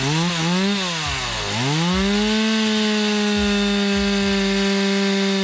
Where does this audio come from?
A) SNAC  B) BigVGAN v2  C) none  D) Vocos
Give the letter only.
C